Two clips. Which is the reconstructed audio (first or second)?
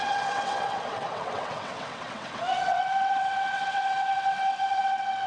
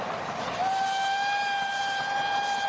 first